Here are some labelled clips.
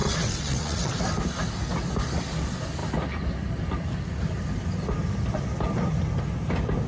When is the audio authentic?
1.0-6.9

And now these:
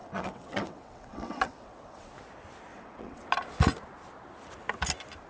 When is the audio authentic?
2.1-2.7; 3.3-5.3

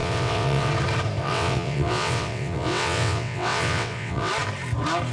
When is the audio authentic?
0.7-1.2; 4.3-5.1

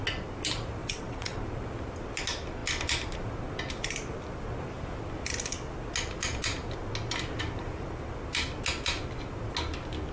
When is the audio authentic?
0.0-0.8; 1.4-10.1

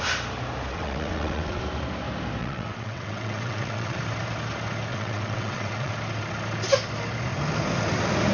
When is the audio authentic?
0.0-0.7; 1.6-2.4; 4.0-4.9; 5.9-8.3